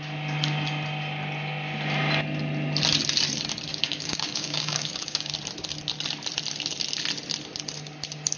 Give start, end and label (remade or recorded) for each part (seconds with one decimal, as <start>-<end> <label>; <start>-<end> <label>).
0.0-3.7 recorded; 3.7-5.3 remade; 5.3-8.4 recorded